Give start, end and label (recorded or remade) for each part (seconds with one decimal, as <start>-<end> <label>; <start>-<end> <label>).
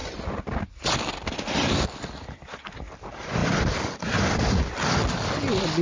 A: 0.0-5.8 recorded